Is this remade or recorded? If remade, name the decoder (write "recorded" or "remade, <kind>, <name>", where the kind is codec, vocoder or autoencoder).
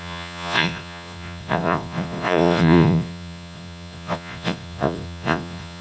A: remade, vocoder, Vocos